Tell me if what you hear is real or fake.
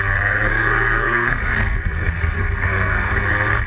fake